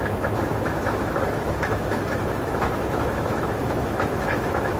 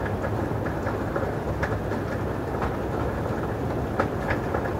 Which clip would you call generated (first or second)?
first